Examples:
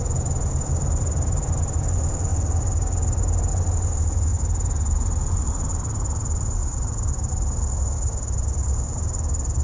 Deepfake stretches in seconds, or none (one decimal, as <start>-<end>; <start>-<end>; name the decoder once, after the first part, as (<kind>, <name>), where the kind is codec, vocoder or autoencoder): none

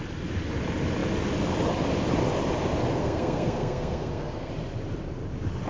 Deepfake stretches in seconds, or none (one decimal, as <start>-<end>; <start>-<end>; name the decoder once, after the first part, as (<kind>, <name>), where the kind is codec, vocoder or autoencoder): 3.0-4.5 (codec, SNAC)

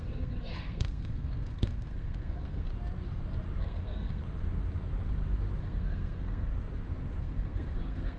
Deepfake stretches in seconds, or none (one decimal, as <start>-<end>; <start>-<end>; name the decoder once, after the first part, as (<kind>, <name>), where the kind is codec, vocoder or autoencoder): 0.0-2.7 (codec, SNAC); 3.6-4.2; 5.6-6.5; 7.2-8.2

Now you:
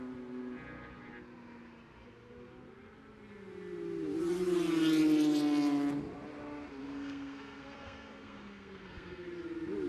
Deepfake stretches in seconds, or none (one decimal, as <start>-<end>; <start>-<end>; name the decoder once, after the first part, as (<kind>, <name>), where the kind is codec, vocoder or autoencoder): 6.8-9.3 (codec, SNAC)